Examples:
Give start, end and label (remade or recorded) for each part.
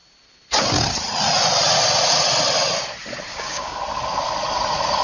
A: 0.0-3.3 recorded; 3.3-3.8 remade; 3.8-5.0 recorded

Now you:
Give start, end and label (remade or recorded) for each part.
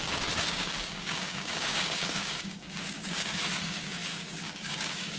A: 0.0-5.2 remade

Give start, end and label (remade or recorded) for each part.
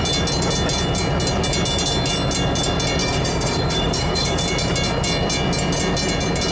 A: 0.0-3.0 recorded; 3.0-4.4 remade; 4.4-6.5 recorded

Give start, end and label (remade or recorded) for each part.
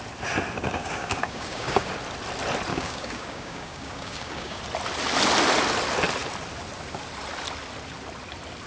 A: 0.0-0.8 recorded; 0.8-1.9 remade; 1.9-2.7 recorded; 2.7-4.6 remade; 4.6-8.7 recorded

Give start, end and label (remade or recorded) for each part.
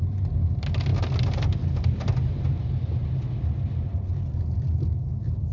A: 0.0-5.5 recorded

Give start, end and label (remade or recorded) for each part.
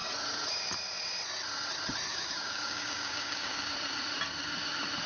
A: 0.0-2.1 recorded; 2.1-3.7 remade; 3.7-5.1 recorded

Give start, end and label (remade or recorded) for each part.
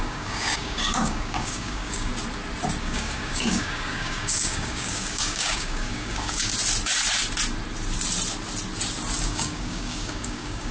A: 0.0-2.1 remade; 2.1-2.8 recorded; 2.8-6.5 remade; 6.5-9.2 recorded; 9.2-10.7 remade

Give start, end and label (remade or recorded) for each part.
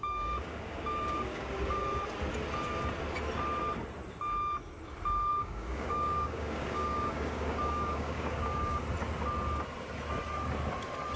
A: 0.0-1.8 remade; 1.8-5.3 recorded; 5.3-8.8 remade; 8.8-11.2 recorded